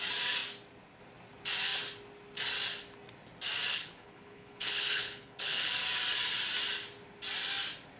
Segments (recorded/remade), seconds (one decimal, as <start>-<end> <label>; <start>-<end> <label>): 0.0-3.7 recorded; 3.7-5.7 remade; 5.7-8.0 recorded